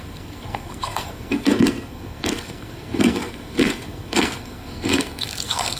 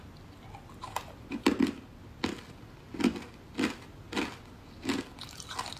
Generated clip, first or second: first